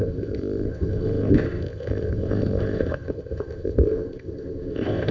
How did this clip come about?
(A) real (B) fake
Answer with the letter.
B